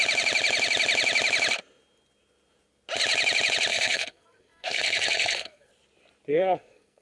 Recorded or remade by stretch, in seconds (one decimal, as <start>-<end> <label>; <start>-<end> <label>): 0.0-3.7 recorded; 3.7-5.7 remade; 5.7-6.3 recorded; 6.3-7.0 remade